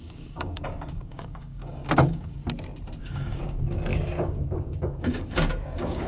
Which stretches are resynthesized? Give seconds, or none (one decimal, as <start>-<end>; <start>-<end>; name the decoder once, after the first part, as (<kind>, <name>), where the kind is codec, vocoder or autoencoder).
0.0-2.4 (codec, DAC); 3.0-6.1